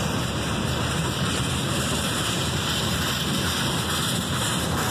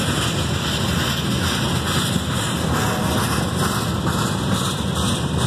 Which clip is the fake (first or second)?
first